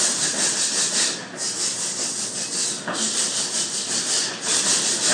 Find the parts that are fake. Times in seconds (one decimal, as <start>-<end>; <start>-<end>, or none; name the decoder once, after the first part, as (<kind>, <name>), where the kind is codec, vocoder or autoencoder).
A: none